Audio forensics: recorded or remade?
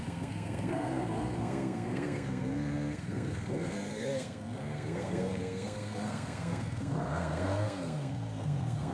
remade